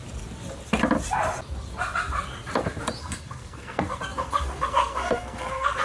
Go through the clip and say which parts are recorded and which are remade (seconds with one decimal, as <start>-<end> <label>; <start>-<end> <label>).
0.0-3.0 recorded; 3.0-5.8 remade

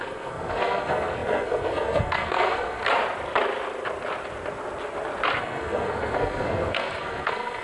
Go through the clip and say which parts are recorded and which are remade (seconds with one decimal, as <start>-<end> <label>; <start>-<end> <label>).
0.0-2.8 remade; 2.8-5.4 recorded; 5.4-7.6 remade

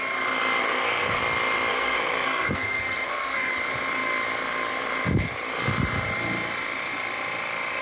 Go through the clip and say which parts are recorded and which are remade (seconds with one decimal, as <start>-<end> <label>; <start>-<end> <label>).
0.0-0.6 recorded; 0.6-1.2 remade; 1.2-1.7 recorded; 1.7-3.5 remade; 3.5-7.8 recorded

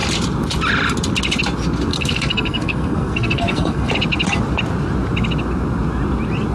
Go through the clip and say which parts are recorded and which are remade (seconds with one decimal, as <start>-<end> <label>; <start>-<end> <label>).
0.0-1.9 recorded; 1.9-3.9 remade; 3.9-6.5 recorded